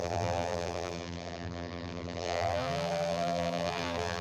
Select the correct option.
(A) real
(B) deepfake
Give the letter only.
B